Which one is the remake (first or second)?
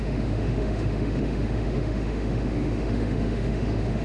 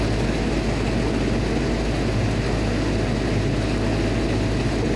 first